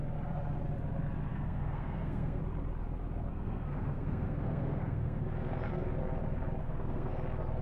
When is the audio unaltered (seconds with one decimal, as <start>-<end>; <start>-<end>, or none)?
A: 0.0-1.3; 2.4-3.3; 5.2-6.6; 7.1-7.6